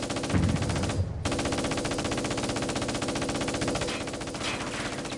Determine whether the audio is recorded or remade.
recorded